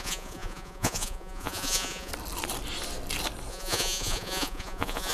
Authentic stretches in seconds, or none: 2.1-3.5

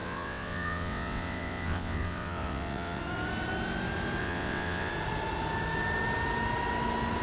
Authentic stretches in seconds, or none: 3.0-4.2; 4.9-7.2

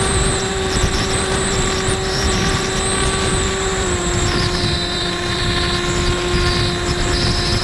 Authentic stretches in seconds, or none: 2.7-3.3; 5.4-7.6

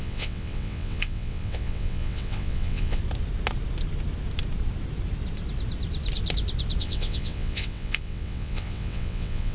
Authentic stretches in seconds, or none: 3.0-6.8